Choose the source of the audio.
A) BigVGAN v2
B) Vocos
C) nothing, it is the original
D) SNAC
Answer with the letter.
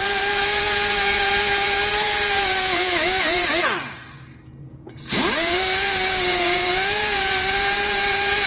B